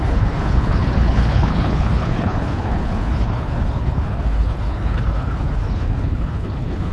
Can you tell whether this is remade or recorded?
remade